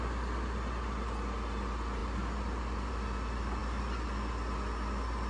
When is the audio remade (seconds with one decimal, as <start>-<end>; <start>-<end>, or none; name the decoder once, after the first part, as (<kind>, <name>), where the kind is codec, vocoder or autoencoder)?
none